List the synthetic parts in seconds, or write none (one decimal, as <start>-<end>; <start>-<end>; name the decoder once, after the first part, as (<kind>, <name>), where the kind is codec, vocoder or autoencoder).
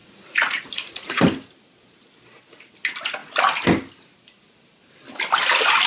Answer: 0.0-1.2 (vocoder, Vocos)